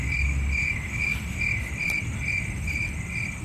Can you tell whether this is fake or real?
real